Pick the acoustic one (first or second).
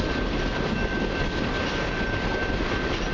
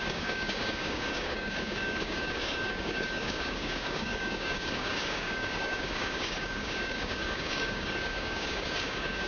first